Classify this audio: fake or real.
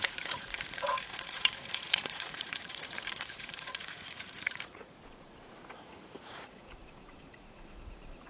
fake